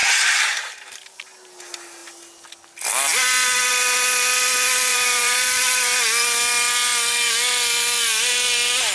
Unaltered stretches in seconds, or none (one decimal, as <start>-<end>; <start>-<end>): 1.0-4.9; 6.0-8.9